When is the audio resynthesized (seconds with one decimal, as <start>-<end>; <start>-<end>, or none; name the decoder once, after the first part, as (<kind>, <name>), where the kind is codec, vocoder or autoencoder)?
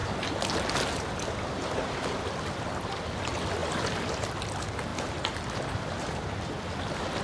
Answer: 3.6-4.3 (vocoder, BigVGAN v2)